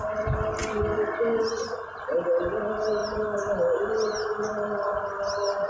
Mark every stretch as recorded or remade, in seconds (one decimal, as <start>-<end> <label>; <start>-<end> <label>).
0.0-3.0 recorded; 3.0-3.9 remade; 3.9-5.7 recorded